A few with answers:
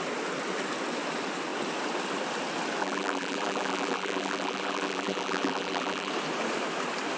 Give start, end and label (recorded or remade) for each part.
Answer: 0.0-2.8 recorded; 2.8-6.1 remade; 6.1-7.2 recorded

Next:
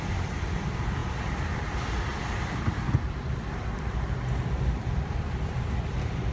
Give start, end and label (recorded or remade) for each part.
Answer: 0.0-6.3 remade

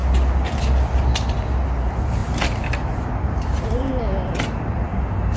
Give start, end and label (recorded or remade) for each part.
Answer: 0.0-2.2 recorded; 2.2-3.9 remade; 3.9-5.4 recorded

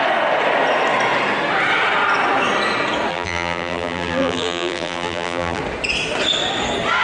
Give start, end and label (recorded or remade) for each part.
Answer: 0.0-3.1 recorded; 3.1-5.6 remade; 5.6-7.0 recorded

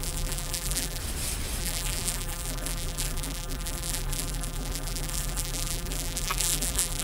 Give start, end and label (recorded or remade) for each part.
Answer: 0.0-1.0 remade; 1.0-1.6 recorded; 1.6-7.0 remade